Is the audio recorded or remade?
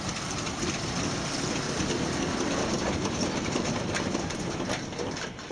recorded